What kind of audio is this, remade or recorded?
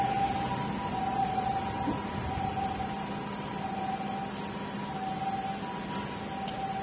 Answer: recorded